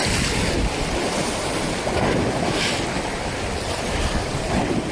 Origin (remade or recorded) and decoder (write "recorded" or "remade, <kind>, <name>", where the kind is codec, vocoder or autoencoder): recorded